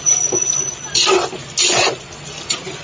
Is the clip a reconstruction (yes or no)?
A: no